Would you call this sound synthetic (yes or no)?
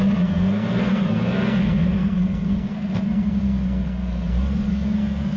yes